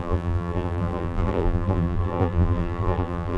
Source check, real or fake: fake